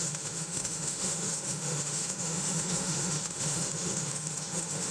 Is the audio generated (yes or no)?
yes